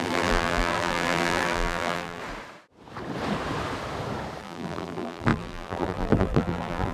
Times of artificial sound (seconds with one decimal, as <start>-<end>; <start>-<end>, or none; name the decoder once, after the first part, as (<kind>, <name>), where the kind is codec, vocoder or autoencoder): 0.0-2.2 (vocoder, BigVGAN v2); 4.4-6.9